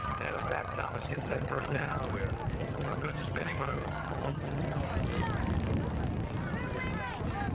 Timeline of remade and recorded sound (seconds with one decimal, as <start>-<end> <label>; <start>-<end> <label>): 0.0-2.0 remade; 2.0-2.6 recorded; 2.6-4.8 remade; 4.8-7.5 recorded